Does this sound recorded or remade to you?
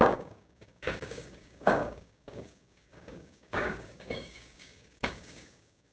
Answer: remade